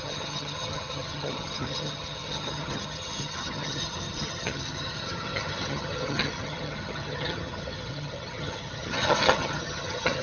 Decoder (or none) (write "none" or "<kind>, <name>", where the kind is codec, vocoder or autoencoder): vocoder, HiFi-GAN